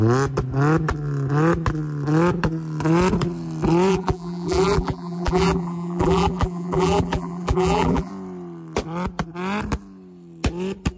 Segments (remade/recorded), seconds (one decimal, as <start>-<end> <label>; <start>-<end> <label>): 0.0-3.9 recorded; 3.9-8.1 remade; 8.1-11.0 recorded